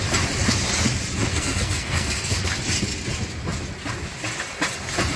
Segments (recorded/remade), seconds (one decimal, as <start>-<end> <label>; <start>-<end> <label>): 0.0-1.3 recorded; 1.3-2.4 remade; 2.4-5.2 recorded